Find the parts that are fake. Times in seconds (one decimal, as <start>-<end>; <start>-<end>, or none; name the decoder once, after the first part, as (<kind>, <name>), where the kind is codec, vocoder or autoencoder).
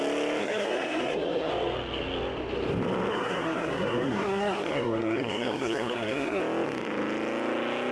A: 0.4-1.5 (codec, SNAC); 3.1-6.4